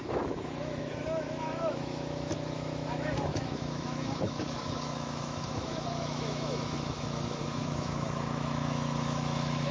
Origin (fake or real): fake